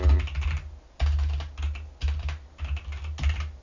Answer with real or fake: real